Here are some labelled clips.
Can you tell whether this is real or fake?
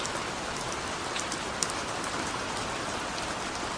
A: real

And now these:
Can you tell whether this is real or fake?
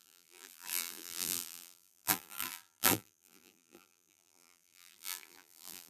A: fake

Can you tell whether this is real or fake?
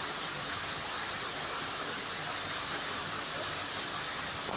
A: real